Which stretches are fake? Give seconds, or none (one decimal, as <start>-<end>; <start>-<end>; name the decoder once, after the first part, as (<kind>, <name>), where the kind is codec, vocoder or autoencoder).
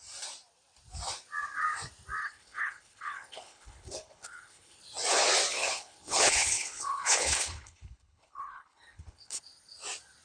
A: 2.2-4.8 (codec, HILCodec); 5.5-9.4